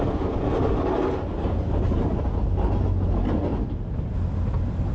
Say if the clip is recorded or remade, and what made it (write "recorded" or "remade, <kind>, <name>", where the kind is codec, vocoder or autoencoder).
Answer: recorded